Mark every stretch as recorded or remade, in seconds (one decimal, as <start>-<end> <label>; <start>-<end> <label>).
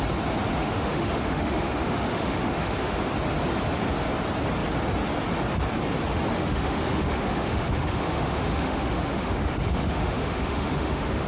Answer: 0.0-0.6 recorded; 0.6-3.0 remade; 3.0-6.4 recorded; 6.4-11.3 remade